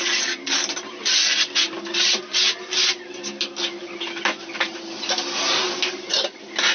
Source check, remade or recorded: recorded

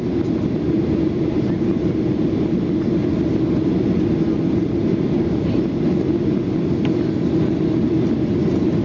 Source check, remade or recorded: recorded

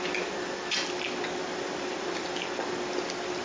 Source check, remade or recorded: recorded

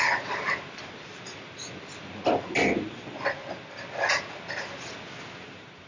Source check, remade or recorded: recorded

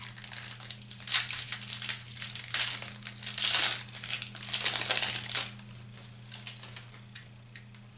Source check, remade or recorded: recorded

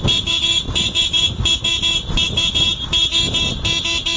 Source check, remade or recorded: recorded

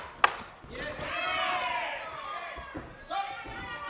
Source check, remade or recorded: recorded